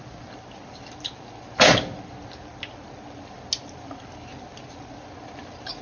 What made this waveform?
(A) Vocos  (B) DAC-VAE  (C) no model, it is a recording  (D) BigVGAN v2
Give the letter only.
C